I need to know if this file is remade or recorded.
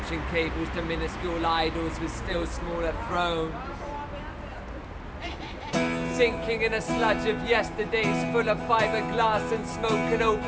recorded